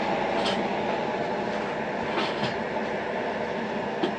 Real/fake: real